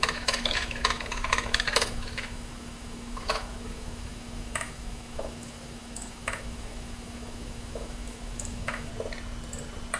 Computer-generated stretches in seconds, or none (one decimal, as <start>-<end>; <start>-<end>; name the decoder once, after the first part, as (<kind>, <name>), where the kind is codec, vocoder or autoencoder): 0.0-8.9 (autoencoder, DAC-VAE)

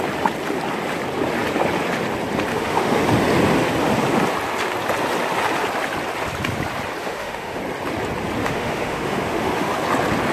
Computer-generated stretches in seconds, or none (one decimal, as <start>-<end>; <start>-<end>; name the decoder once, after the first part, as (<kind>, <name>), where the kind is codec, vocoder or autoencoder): 2.5-3.0 (autoencoder, DAC-VAE); 7.0-7.6; 8.4-9.7

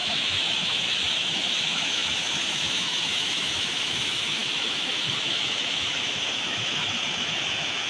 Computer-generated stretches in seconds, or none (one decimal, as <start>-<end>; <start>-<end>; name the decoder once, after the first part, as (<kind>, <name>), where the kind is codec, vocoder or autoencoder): 0.0-7.9 (autoencoder, DAC-VAE)

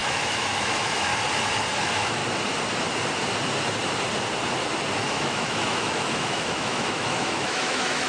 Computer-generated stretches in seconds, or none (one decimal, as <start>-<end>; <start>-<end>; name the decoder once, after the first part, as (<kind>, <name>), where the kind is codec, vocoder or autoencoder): 0.0-1.1 (autoencoder, DAC-VAE); 1.8-2.2; 5.1-8.1

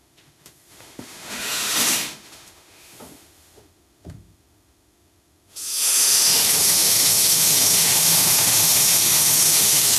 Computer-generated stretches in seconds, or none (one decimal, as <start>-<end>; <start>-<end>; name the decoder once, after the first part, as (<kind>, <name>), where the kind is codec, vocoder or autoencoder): 0.0-10.0 (autoencoder, DAC-VAE)

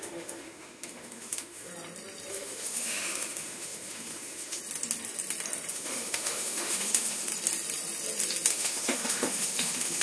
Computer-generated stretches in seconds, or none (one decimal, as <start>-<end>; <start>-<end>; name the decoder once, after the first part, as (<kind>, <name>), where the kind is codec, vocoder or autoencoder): 0.0-1.7 (autoencoder, DAC-VAE); 2.3-4.6; 5.7-7.3; 8.5-10.0